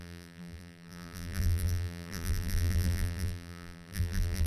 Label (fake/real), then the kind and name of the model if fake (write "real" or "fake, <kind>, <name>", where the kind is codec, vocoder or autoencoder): fake, vocoder, BigVGAN v2